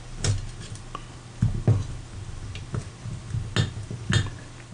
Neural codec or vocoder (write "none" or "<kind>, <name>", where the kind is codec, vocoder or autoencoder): none